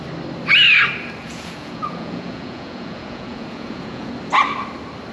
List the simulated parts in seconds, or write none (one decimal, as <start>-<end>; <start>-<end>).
1.2-4.1